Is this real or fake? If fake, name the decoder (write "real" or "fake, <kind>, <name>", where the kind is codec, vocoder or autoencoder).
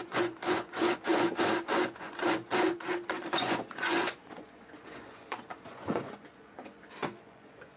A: fake, vocoder, Vocos